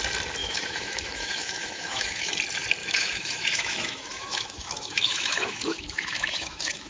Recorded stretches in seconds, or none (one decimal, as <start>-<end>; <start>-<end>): 0.0-0.4; 2.3-2.8